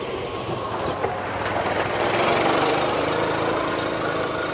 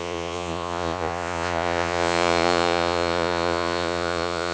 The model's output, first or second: second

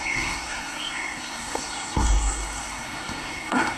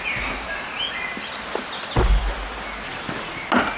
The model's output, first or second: first